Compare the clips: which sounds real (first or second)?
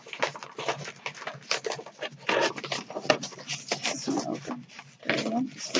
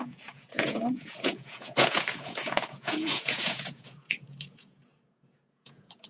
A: first